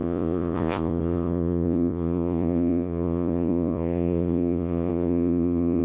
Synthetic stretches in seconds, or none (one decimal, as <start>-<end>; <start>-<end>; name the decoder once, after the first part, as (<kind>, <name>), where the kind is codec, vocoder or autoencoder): 0.0-5.8 (vocoder, Vocos)